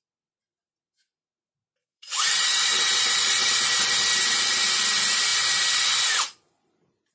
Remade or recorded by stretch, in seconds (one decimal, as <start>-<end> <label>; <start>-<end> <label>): 0.0-1.8 recorded; 1.8-3.9 remade; 3.9-7.1 recorded